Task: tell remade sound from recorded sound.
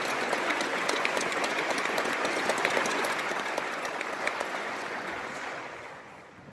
remade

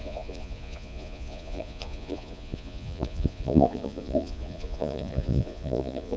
remade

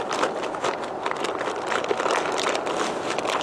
recorded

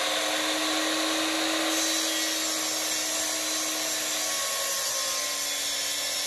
recorded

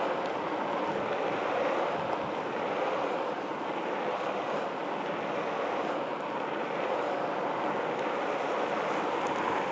recorded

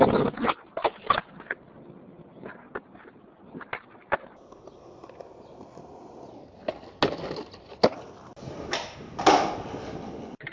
recorded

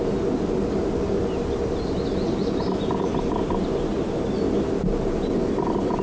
recorded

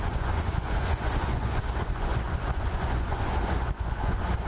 remade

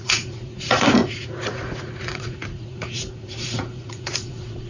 remade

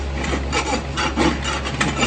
recorded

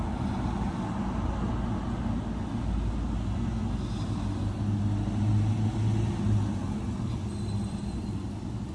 recorded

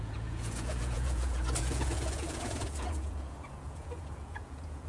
remade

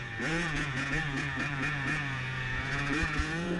remade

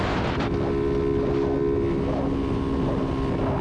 recorded